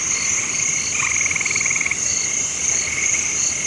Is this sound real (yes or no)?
yes